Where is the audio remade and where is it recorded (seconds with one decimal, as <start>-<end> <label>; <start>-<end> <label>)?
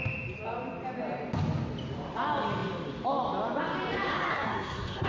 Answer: 0.0-4.3 recorded; 4.3-5.1 remade